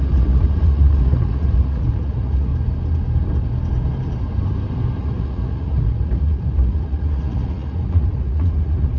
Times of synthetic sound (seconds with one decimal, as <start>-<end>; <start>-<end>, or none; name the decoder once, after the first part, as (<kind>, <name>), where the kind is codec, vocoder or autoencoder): 0.0-2.5 (vocoder, Vocos); 5.0-9.0